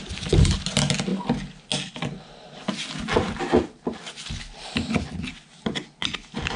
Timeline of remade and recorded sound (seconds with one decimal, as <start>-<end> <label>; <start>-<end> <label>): 0.0-6.6 recorded